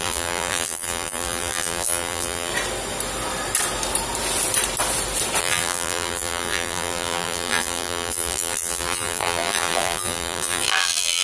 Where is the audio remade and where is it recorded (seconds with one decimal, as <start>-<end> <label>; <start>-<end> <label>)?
0.0-2.5 remade; 2.5-5.4 recorded; 5.4-11.2 remade